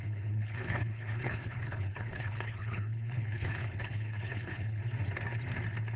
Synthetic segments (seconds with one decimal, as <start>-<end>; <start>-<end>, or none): 0.0-4.8